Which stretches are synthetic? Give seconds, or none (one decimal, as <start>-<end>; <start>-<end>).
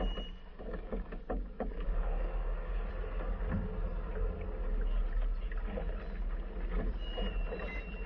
0.5-2.9